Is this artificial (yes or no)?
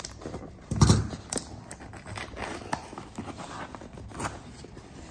no